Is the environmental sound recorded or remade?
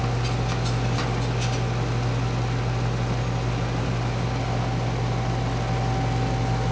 recorded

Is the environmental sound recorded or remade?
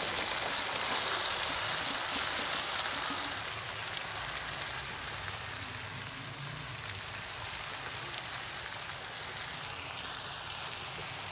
recorded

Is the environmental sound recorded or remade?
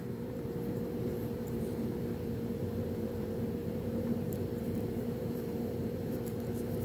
remade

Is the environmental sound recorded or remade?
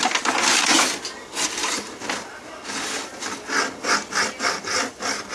recorded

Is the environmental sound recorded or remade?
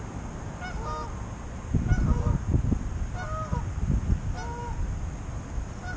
recorded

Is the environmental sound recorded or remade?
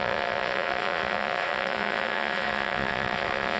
remade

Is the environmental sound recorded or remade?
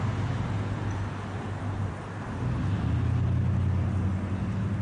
recorded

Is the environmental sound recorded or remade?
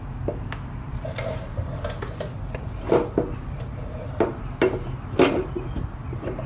recorded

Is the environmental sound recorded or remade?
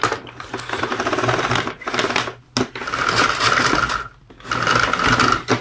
recorded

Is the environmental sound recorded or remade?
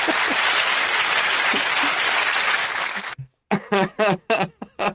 recorded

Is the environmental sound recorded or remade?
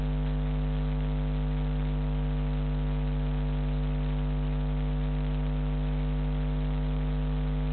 recorded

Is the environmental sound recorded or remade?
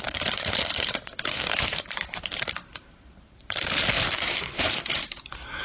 remade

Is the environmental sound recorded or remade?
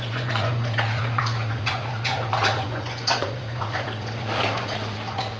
remade